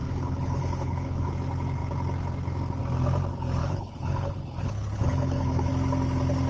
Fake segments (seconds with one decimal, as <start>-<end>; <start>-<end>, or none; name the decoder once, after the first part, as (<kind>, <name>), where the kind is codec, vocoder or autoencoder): 0.0-1.3 (codec, HILCodec); 3.6-5.7